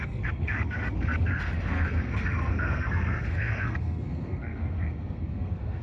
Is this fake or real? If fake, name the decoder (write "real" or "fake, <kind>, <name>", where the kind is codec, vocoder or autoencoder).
fake, codec, SNAC